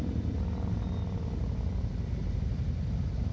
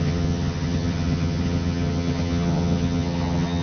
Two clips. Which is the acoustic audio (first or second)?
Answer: first